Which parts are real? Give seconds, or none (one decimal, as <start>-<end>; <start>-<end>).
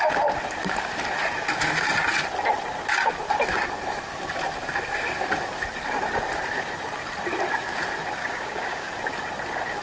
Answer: 0.0-8.2; 8.9-9.8